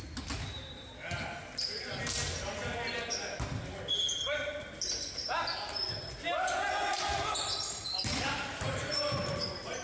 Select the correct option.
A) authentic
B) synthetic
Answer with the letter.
A